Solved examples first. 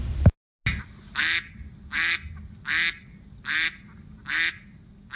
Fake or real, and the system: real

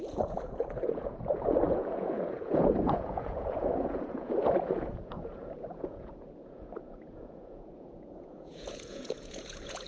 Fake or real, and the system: fake, vocoder, Vocos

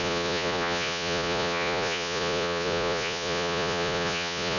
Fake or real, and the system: fake, vocoder, Vocos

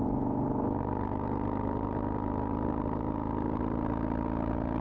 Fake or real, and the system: real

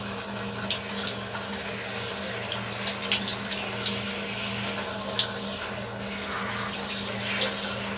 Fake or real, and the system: real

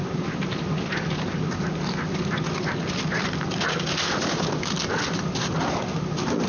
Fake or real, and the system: real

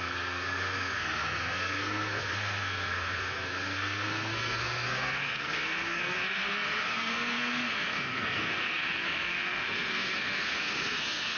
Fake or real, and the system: fake, codec, SNAC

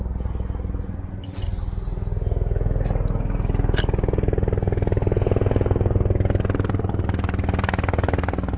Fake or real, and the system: real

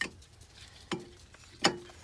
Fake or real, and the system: real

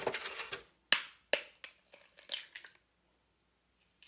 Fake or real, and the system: real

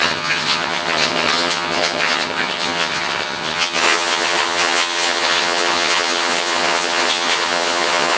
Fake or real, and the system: fake, vocoder, HiFi-GAN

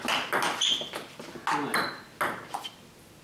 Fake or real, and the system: real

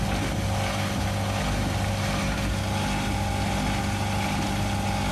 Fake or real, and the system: real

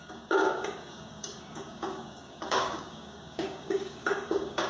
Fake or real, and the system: fake, codec, DAC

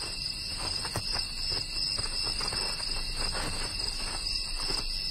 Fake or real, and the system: real